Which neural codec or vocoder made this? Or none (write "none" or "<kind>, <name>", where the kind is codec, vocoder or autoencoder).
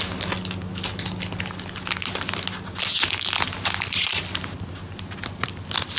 none